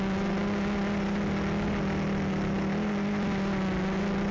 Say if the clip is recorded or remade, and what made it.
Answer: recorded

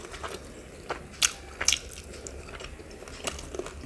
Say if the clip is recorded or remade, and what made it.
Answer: recorded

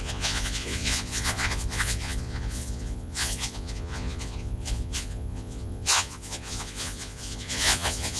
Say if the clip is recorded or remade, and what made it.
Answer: remade, vocoder, Vocos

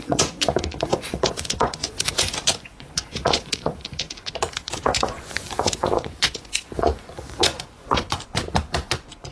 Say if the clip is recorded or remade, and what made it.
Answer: remade, vocoder, Vocos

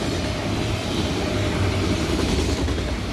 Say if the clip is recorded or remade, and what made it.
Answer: recorded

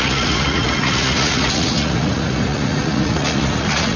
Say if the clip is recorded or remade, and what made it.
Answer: remade, vocoder, Vocos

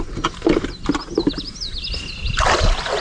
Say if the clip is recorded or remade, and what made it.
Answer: recorded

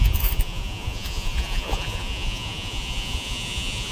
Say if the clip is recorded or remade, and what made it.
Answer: remade, vocoder, Vocos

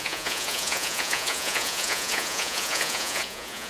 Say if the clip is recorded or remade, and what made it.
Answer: remade, vocoder, Vocos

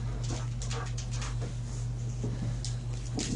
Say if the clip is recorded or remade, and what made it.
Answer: recorded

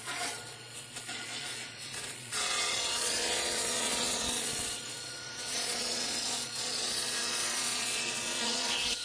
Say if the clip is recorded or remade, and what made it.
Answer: remade, vocoder, Vocos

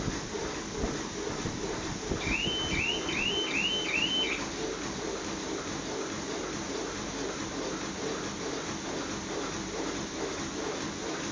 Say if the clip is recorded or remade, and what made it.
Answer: recorded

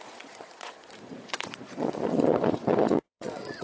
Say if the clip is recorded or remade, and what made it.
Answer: remade, vocoder, Vocos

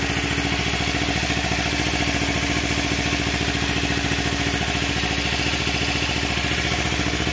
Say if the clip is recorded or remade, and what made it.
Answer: recorded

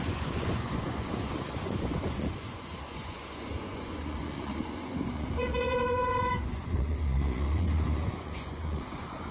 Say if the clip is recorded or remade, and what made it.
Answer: remade, vocoder, Vocos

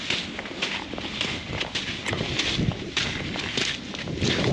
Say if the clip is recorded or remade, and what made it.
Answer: recorded